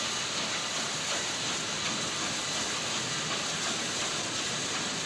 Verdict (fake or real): real